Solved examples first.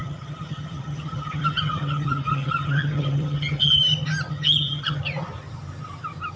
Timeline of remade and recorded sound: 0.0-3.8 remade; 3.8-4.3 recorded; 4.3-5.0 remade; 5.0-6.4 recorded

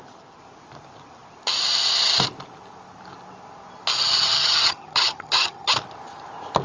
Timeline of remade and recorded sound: 0.0-4.0 recorded; 4.0-5.7 remade; 5.7-6.6 recorded